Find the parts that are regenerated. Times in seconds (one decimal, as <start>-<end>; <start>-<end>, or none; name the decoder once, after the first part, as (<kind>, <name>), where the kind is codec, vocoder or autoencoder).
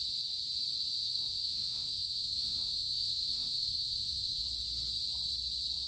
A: 1.0-4.4 (autoencoder, DAC-VAE)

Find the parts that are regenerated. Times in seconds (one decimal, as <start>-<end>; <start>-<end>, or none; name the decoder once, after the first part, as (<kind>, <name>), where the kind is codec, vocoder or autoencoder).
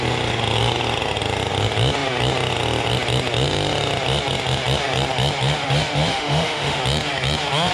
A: 6.1-6.8 (autoencoder, DAC-VAE)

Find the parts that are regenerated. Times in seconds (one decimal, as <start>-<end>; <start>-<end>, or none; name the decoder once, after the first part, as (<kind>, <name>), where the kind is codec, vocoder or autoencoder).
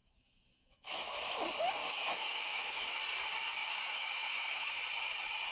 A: 0.0-1.1 (autoencoder, DAC-VAE); 1.8-3.0; 3.6-4.8